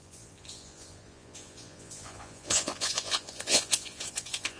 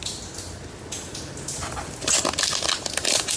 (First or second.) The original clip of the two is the second